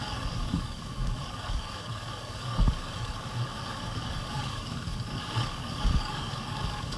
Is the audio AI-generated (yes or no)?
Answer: yes